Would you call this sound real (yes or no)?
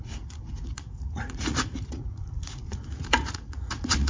no